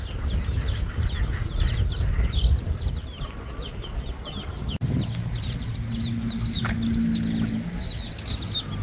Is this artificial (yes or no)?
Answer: no